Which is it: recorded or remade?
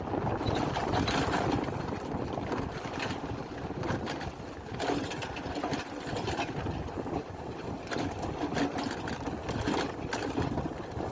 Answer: recorded